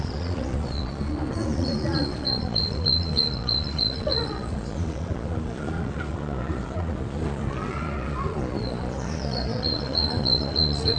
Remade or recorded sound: remade